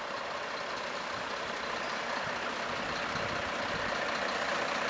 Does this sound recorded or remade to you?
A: recorded